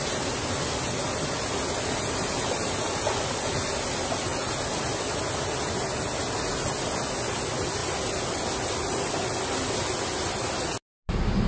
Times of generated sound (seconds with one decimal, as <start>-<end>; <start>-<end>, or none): none